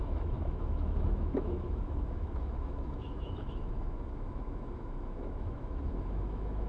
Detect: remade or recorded remade